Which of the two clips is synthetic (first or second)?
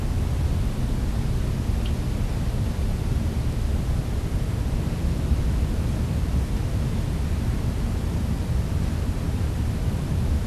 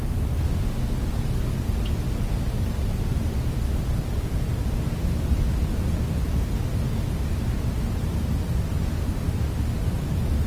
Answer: first